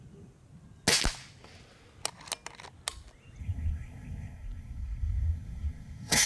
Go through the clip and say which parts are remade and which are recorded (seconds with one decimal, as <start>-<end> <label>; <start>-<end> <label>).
0.0-3.4 recorded; 3.4-6.3 remade

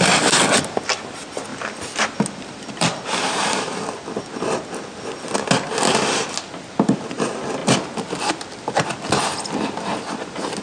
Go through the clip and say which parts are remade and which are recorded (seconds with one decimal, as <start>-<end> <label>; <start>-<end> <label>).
0.0-1.5 recorded; 1.5-4.2 remade; 4.2-10.6 recorded

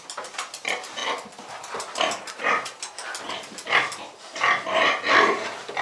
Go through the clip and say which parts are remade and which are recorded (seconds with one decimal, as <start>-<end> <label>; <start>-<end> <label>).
0.0-5.8 recorded

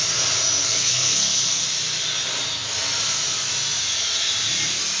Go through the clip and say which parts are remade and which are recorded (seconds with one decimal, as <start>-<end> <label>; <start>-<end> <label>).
0.0-0.6 recorded; 0.6-1.6 remade; 1.6-5.0 recorded

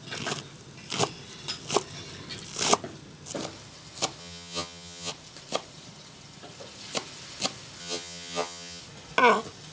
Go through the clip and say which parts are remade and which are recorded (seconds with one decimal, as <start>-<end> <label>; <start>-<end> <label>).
0.0-4.2 recorded; 4.2-5.1 remade; 5.1-7.8 recorded; 7.8-8.8 remade; 8.8-9.7 recorded

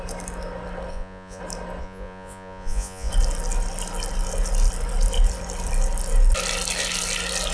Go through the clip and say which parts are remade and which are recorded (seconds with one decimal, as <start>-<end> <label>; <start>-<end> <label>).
0.0-0.9 recorded; 0.9-1.4 remade; 1.4-1.8 recorded; 1.8-3.1 remade; 3.1-7.5 recorded